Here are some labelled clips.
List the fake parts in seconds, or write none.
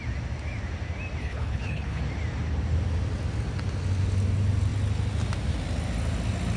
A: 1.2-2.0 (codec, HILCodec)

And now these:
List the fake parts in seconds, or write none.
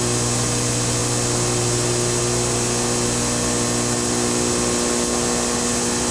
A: none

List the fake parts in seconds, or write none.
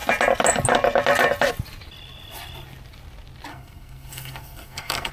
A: 3.5-5.1 (codec, SNAC)